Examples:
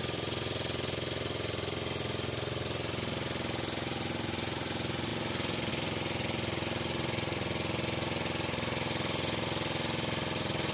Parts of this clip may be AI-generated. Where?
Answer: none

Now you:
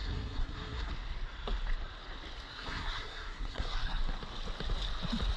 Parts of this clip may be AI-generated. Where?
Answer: 0.0-0.9; 2.5-4.0

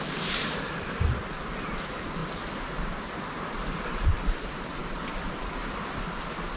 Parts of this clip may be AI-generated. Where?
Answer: none

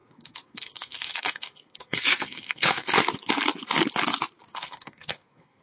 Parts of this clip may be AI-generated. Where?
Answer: 0.0-2.9; 4.5-5.6

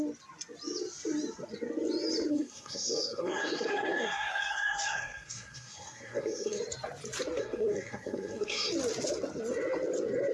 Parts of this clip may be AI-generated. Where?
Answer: 2.3-6.6; 7.4-8.7

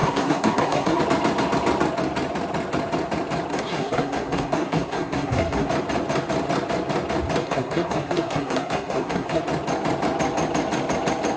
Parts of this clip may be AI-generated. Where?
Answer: 0.0-1.0; 3.5-5.7; 7.4-9.4

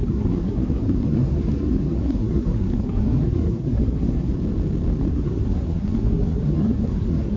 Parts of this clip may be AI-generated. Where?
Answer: 0.0-4.3; 5.1-7.4